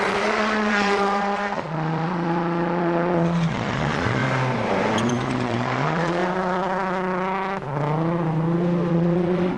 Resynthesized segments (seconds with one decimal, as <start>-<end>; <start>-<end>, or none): 0.0-4.2; 5.1-6.2; 8.9-9.6

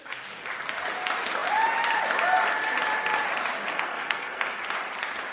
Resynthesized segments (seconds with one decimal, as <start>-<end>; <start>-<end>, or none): 3.7-4.6

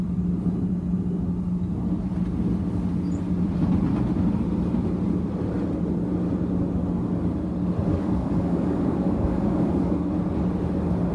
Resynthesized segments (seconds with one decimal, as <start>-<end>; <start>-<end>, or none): 7.9-10.1